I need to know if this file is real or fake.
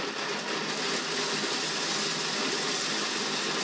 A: real